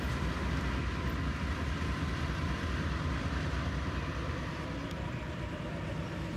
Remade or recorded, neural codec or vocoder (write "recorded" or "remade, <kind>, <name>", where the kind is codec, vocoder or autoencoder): recorded